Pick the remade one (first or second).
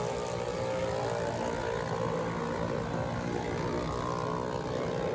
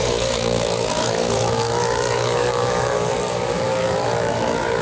second